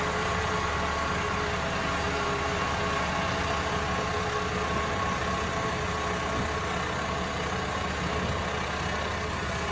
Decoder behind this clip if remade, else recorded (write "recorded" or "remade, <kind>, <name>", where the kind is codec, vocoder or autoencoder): recorded